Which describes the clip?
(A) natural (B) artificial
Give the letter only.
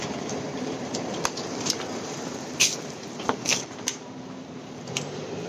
B